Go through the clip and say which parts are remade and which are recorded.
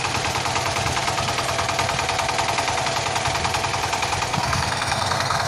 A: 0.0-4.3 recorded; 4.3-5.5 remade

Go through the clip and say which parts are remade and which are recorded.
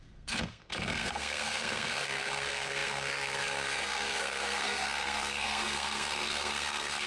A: 0.0-7.1 remade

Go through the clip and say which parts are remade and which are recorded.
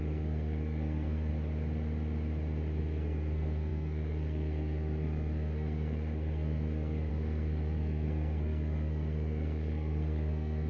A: 0.0-1.3 remade; 1.3-2.8 recorded; 2.8-10.7 remade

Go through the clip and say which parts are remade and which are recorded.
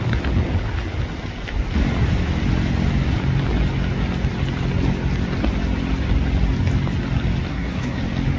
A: 0.0-7.5 recorded; 7.5-8.0 remade; 8.0-8.4 recorded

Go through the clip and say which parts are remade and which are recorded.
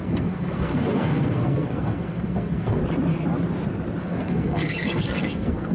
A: 0.0-2.8 remade; 2.8-4.0 recorded; 4.0-5.7 remade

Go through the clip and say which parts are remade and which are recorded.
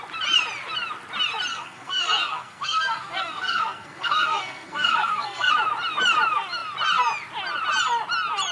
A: 0.0-1.5 recorded; 1.5-5.5 remade; 5.5-8.5 recorded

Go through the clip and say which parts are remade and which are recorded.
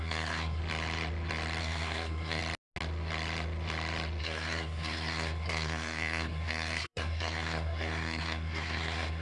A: 0.0-0.6 remade; 0.6-1.6 recorded; 1.6-2.4 remade; 2.4-4.2 recorded; 4.2-9.2 remade